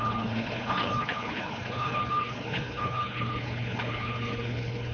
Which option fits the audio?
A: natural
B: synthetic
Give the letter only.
B